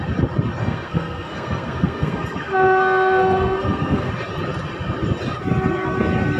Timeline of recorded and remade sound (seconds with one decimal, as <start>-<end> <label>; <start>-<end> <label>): 0.0-0.6 recorded; 0.6-4.1 remade; 4.1-6.4 recorded

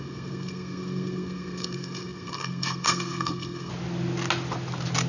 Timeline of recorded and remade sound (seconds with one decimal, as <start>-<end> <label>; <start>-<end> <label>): 0.0-3.7 remade; 3.7-5.1 recorded

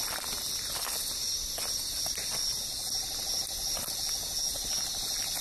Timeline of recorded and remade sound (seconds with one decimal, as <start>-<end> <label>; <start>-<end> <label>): 0.0-5.4 recorded

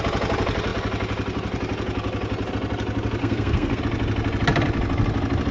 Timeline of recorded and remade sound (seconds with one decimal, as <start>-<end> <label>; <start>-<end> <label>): 0.0-3.2 recorded; 3.2-3.8 remade; 3.8-5.5 recorded

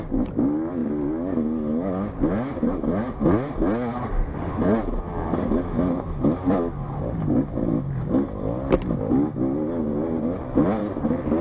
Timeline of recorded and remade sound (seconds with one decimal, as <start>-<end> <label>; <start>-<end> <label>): 0.0-11.4 recorded

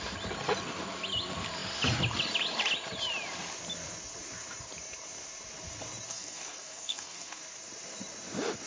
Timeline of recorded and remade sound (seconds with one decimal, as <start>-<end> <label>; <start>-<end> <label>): 0.0-6.1 recorded; 6.1-7.4 remade; 7.4-8.7 recorded

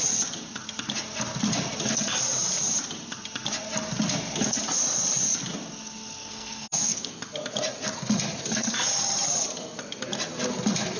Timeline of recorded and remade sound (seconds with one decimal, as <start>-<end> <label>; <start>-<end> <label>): 0.0-6.2 recorded; 6.2-7.1 remade; 7.1-11.0 recorded